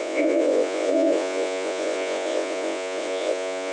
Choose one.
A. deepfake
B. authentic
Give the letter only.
A